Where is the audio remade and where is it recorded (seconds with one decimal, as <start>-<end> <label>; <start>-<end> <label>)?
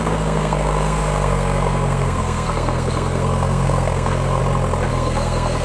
0.0-4.4 remade; 4.4-4.9 recorded; 4.9-5.6 remade